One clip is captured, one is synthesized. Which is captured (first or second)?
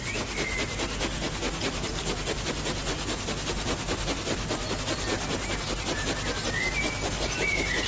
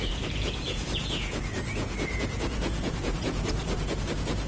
first